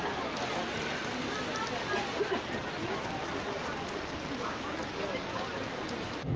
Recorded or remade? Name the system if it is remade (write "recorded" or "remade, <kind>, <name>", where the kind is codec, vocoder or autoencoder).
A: recorded